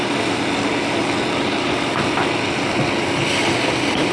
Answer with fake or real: real